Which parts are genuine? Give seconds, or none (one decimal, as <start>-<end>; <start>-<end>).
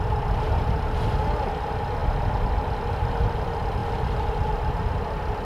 0.0-5.4